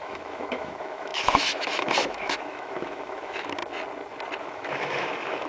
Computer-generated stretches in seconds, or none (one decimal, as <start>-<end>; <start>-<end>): 0.0-3.6; 4.4-5.5